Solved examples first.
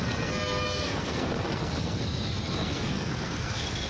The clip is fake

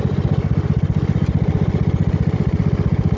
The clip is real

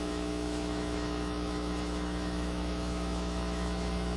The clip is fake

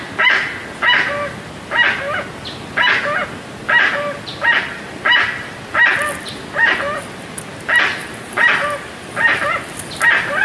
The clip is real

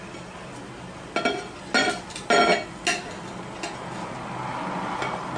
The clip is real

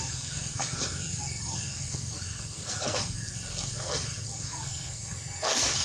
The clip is fake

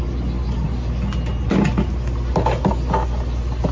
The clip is real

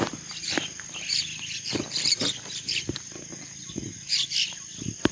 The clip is real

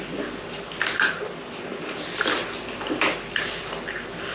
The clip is real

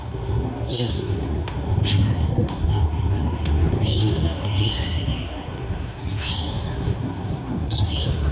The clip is fake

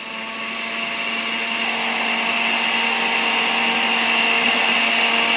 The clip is real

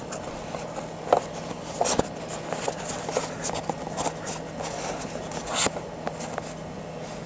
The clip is real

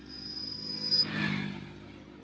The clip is real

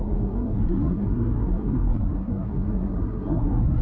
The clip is fake